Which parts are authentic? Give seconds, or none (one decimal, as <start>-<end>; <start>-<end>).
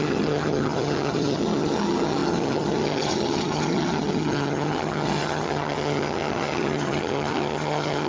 none